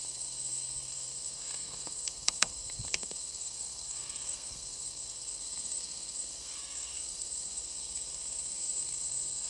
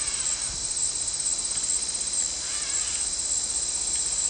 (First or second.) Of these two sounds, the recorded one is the second